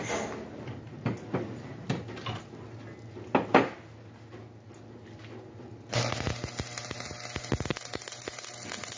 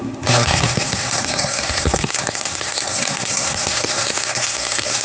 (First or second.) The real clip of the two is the first